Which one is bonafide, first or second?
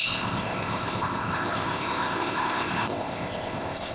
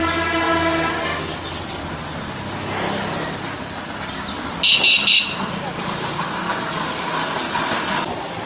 second